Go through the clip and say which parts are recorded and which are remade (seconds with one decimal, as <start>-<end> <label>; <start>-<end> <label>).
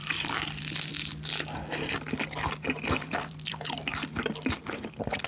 0.0-0.9 remade; 0.9-2.5 recorded; 2.5-3.9 remade; 3.9-5.3 recorded